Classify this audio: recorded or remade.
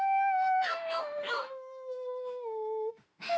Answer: remade